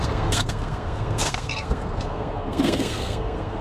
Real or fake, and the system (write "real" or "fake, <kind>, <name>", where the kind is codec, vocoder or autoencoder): fake, codec, SNAC